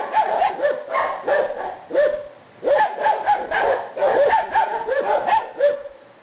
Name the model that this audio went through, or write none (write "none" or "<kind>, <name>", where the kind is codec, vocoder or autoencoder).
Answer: none